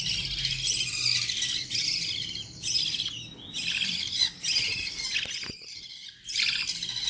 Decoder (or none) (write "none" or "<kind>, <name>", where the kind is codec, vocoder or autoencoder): none